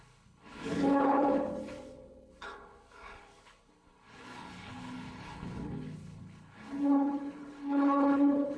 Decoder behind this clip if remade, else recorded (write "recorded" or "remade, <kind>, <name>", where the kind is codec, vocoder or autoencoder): remade, codec, HILCodec